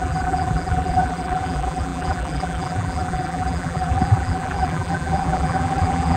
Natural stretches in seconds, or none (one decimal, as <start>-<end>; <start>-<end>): none